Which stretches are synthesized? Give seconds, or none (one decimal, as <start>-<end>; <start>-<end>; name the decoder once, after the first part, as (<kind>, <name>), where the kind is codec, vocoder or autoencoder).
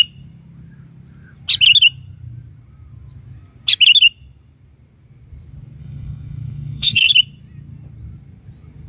5.8-7.1 (codec, SNAC)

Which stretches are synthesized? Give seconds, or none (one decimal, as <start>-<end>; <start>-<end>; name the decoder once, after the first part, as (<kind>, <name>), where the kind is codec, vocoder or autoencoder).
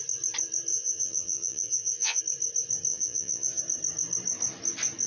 0.7-2.2 (vocoder, Vocos); 2.9-3.6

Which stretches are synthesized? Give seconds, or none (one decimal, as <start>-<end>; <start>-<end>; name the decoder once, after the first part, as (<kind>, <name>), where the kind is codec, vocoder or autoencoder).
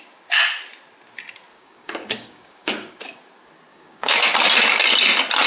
1.5-3.0 (codec, DAC); 3.7-4.2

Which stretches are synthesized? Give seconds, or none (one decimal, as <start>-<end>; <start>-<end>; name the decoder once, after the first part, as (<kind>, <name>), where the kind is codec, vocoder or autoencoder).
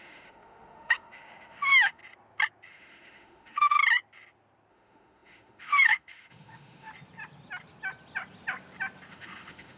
0.0-2.0 (autoencoder, DAC-VAE); 2.7-3.8; 4.7-6.9; 9.1-9.8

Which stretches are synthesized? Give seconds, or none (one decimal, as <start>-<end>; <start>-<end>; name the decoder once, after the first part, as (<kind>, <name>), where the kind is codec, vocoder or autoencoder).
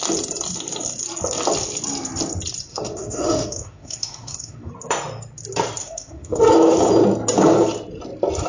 2.7-4.7 (autoencoder, DAC-VAE); 5.8-6.4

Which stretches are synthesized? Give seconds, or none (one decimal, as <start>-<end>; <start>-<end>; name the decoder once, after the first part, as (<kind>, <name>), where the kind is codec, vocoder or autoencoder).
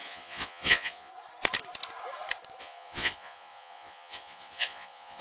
0.0-1.1 (vocoder, Vocos); 2.6-5.2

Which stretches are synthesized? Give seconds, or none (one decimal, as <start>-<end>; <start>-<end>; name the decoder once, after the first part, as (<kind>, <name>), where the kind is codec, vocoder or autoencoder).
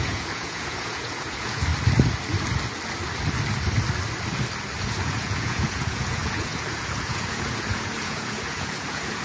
0.0-1.7 (vocoder, Vocos); 4.8-9.2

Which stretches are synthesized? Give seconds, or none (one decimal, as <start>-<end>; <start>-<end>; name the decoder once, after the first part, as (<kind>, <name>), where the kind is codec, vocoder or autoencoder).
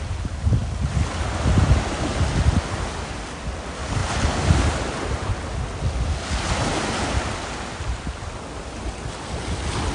none